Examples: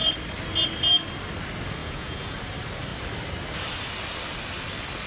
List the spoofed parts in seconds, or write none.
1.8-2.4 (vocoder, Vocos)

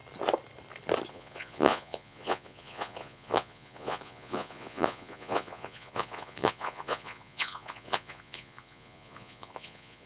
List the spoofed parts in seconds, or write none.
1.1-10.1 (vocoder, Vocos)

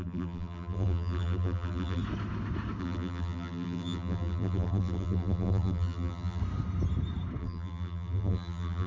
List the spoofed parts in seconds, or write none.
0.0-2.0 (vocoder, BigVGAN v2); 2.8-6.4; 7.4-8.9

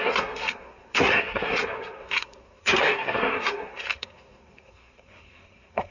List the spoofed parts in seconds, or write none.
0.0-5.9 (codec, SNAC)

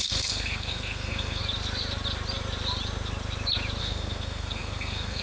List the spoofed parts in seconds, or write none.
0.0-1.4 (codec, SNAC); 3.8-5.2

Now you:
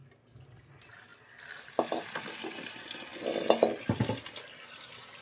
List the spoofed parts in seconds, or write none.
none